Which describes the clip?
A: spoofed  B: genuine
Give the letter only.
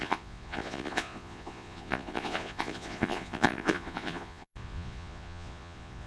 A